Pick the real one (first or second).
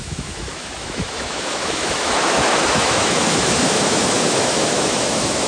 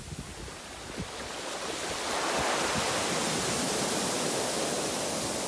second